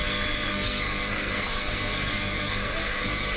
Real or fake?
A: fake